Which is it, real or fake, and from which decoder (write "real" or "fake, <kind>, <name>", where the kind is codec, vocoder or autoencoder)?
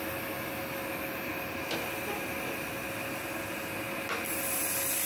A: real